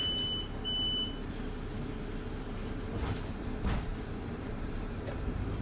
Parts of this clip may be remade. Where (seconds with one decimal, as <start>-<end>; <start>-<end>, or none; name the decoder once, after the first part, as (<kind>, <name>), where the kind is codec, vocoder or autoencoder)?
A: 3.4-5.6 (vocoder, BigVGAN v2)